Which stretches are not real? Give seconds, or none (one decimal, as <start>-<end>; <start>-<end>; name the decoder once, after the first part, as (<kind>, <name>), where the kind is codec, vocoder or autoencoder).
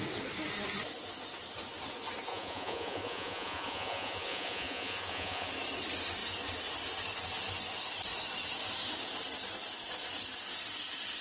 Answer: 2.3-5.5 (vocoder, Vocos)